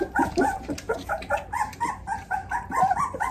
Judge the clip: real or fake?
real